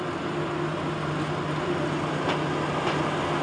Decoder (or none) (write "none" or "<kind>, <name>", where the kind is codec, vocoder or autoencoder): none